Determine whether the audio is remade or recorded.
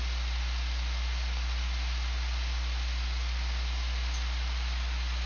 recorded